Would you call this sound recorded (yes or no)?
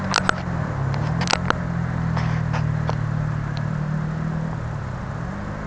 yes